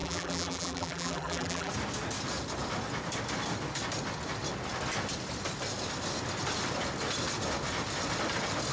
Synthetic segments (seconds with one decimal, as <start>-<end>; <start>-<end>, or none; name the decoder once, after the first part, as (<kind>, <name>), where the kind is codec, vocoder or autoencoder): 0.0-1.7 (vocoder, BigVGAN v2)